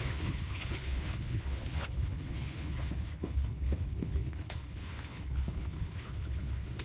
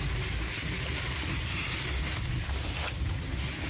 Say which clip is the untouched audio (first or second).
second